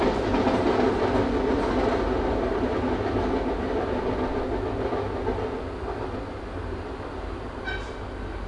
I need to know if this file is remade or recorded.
recorded